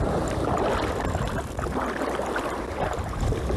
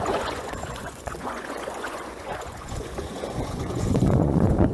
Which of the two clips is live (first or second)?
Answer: first